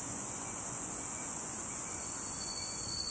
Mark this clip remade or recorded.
remade